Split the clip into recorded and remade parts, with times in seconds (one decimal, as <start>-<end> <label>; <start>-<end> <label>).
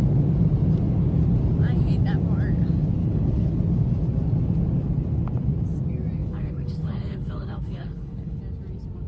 0.0-3.0 recorded; 3.0-3.6 remade; 3.6-6.2 recorded; 6.2-8.4 remade; 8.4-9.1 recorded